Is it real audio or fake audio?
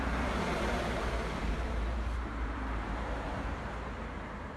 fake